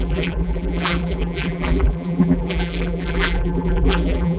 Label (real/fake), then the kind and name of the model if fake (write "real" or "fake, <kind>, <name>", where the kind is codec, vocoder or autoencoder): fake, vocoder, BigVGAN v2